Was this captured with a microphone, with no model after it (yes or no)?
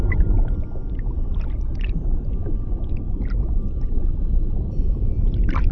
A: no